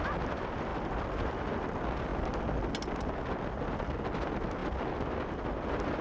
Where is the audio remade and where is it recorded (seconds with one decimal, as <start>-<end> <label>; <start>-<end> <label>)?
0.0-0.7 recorded; 0.7-1.3 remade; 1.3-6.0 recorded